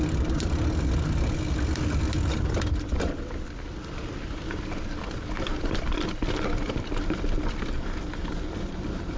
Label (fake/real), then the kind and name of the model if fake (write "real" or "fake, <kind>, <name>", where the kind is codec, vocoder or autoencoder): real